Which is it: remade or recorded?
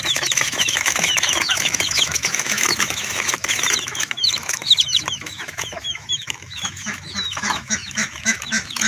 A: remade